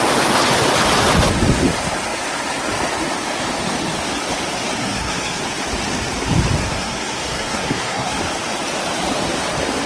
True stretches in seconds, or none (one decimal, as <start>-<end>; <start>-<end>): 0.0-4.8; 5.4-6.6; 8.2-9.9